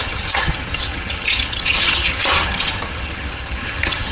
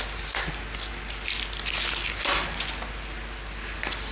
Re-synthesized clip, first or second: first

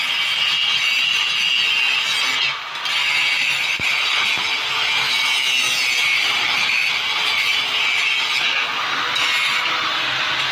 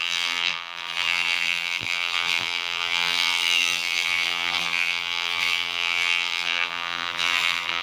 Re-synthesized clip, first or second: second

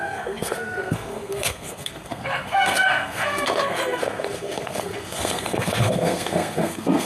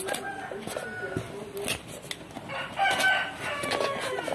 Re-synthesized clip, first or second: first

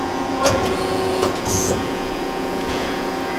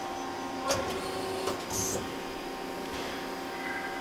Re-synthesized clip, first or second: first